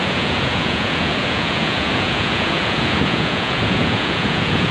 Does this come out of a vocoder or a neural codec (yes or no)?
yes